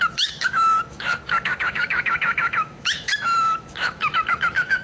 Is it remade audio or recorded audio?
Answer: remade